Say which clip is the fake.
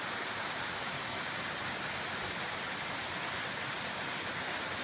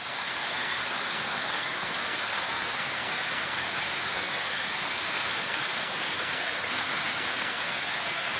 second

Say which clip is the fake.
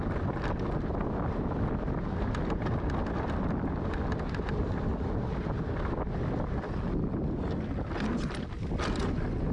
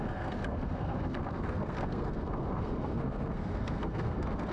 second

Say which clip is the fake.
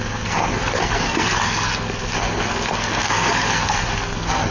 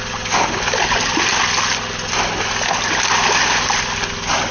first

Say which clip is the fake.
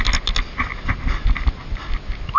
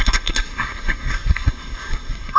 second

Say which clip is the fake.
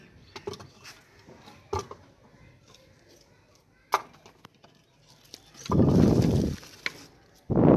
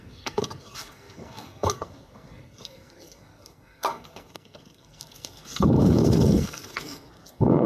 second